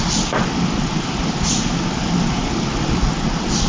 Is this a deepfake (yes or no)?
no